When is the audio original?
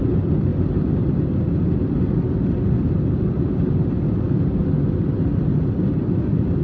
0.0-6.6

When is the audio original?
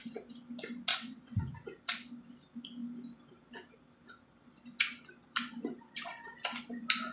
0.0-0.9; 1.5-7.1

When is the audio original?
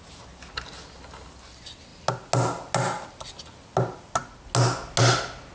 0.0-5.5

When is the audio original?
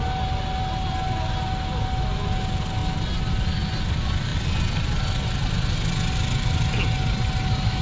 0.0-7.8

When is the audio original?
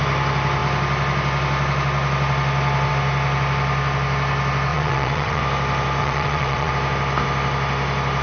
0.0-4.7; 5.4-6.0; 6.7-8.2